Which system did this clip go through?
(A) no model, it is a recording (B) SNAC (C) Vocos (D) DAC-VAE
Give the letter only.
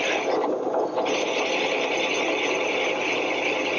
A